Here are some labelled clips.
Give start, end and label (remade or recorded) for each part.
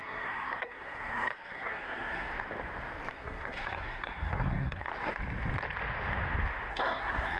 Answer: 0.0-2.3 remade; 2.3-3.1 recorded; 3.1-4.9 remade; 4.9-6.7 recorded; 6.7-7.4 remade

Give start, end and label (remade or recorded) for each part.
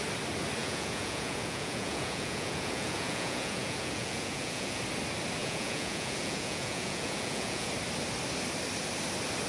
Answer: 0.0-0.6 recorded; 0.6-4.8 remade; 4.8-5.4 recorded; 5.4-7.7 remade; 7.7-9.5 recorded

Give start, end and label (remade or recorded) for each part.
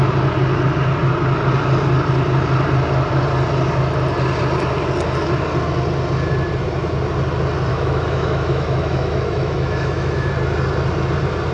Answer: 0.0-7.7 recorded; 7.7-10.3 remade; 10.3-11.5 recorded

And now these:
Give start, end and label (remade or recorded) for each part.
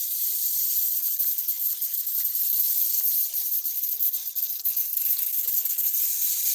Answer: 0.0-2.3 recorded; 2.3-3.1 remade; 3.1-6.5 recorded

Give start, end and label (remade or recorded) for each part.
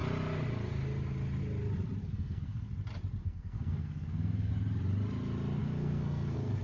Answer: 0.0-2.0 recorded; 2.0-2.7 remade; 2.7-3.2 recorded; 3.2-4.5 remade; 4.5-5.6 recorded; 5.6-6.6 remade